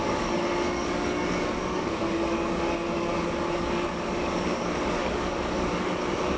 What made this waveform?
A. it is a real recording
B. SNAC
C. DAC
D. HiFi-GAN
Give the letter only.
C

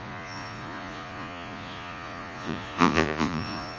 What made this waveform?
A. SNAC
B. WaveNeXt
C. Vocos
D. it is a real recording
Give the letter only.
C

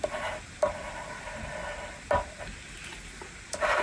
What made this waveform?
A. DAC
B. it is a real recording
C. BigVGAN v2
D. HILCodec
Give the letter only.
B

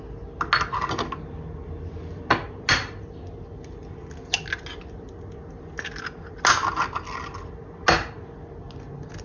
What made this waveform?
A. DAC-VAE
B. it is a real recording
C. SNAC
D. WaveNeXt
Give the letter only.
B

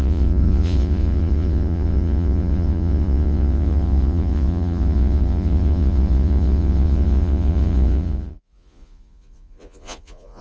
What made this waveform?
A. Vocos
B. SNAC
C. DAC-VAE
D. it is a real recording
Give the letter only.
A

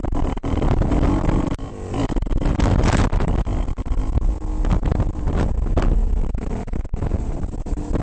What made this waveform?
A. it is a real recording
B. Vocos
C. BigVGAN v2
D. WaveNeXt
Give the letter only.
A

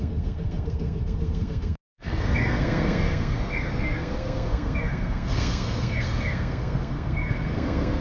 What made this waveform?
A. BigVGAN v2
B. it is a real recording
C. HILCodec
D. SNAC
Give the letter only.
D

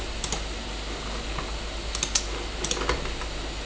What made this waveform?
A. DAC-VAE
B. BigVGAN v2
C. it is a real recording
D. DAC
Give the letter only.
C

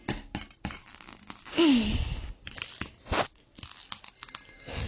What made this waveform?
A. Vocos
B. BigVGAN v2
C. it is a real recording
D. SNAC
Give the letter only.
C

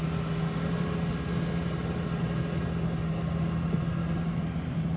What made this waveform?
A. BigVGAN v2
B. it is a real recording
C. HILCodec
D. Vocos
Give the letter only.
B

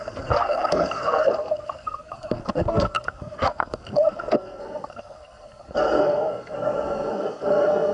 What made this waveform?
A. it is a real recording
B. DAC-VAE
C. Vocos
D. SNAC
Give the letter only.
D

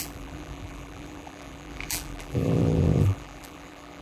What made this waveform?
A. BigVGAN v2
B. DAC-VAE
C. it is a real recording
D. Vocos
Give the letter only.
A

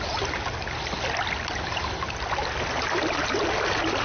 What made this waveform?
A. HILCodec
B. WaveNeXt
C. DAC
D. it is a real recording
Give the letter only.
D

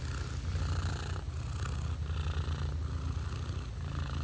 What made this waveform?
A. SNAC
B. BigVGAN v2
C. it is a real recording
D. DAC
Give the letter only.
C